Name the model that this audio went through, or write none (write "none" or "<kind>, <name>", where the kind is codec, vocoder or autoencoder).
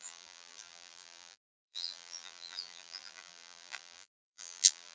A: vocoder, BigVGAN v2